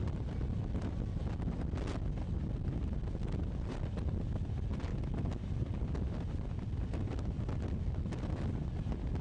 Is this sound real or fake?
real